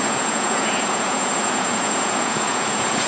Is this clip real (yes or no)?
no